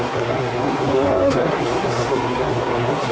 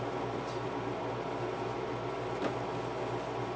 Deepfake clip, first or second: first